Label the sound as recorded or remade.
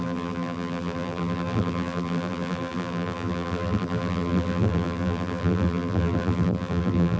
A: remade